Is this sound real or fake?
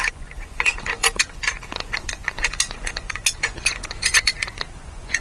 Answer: fake